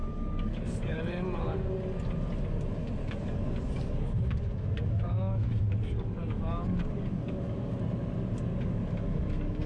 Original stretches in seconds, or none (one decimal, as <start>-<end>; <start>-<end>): 1.0-3.0; 7.8-8.5